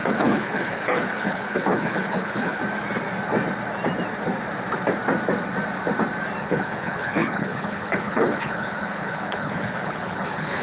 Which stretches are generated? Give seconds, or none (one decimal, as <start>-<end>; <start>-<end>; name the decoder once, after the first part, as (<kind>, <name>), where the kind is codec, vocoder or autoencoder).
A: 0.0-2.6 (codec, HILCodec); 6.4-10.6